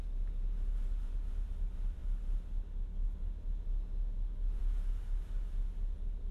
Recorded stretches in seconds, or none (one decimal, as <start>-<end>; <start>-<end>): 0.0-6.3